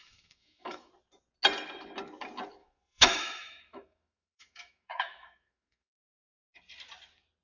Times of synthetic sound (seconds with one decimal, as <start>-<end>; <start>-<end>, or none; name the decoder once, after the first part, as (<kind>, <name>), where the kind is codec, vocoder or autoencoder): 0.0-0.9 (autoencoder, DAC-VAE); 2.6-6.5